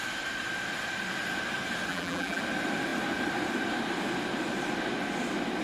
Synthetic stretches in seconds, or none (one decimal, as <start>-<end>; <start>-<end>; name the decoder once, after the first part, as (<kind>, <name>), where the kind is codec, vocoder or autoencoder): 1.9-2.4 (vocoder, BigVGAN v2)